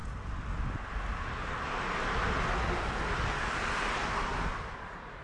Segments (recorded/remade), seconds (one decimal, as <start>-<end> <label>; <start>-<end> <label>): 0.0-5.2 recorded